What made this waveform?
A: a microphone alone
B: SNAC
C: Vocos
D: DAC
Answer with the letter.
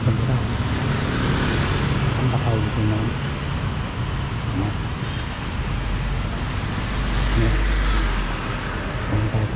A